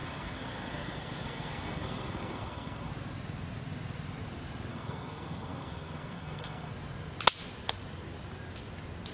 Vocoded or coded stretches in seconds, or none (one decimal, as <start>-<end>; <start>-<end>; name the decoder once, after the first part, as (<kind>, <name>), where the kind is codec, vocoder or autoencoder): 0.0-2.9 (codec, SNAC); 4.7-6.7